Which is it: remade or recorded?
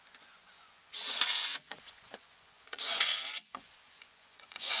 remade